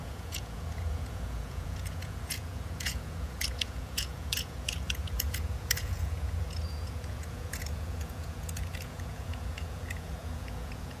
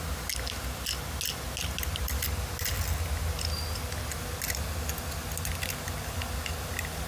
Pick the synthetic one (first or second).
first